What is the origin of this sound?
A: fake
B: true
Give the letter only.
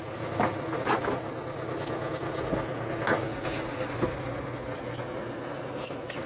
B